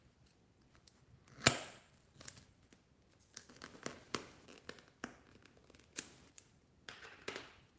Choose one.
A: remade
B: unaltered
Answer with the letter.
B